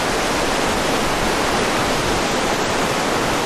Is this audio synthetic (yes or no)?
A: no